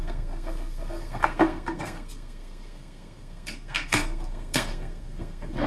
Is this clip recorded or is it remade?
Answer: remade